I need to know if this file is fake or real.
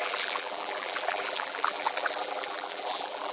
fake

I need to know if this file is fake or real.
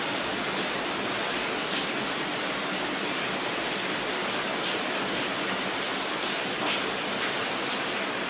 real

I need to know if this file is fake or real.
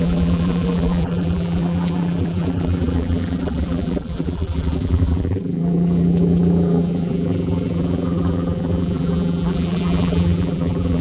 fake